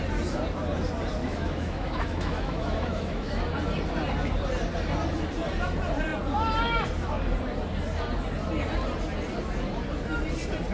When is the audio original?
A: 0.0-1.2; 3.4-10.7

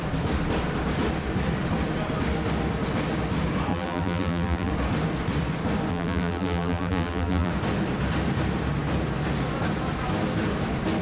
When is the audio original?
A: 0.0-3.7; 4.7-5.9; 7.5-11.0

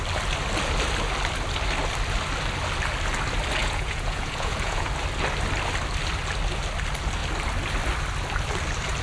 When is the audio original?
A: 0.0-3.6; 4.9-9.0